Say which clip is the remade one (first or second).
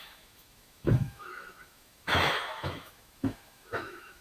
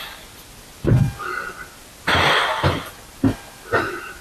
first